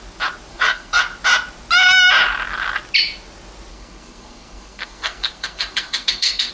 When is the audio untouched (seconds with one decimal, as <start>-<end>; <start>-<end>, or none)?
0.0-0.5; 1.0-3.7